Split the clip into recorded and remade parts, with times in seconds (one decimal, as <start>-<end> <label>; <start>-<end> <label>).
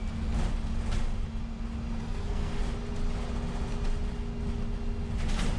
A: 0.0-2.0 recorded; 2.0-2.5 remade; 2.5-5.6 recorded